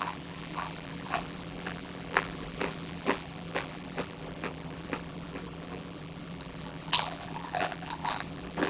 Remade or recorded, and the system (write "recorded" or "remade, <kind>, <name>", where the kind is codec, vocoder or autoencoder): remade, vocoder, BigVGAN v2